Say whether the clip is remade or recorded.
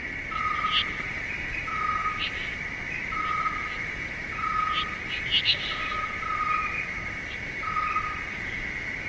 recorded